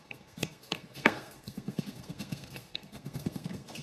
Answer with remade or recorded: remade